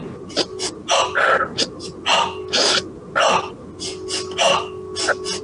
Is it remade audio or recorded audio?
recorded